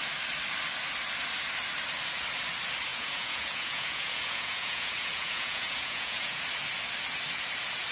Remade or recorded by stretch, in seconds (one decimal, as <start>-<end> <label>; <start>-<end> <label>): 0.0-2.9 recorded; 2.9-6.4 remade; 6.4-7.9 recorded